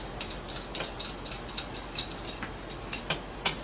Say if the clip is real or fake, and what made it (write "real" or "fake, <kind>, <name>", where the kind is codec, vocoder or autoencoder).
real